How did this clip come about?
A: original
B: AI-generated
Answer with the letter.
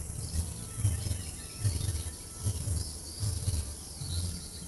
A